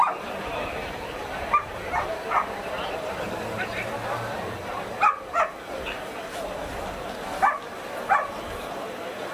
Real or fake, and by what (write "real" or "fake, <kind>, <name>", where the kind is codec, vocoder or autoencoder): real